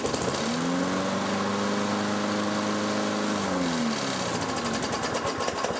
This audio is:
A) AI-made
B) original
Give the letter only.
B